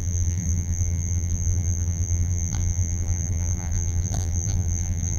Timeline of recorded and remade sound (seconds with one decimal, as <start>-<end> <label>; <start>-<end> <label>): 0.0-5.2 remade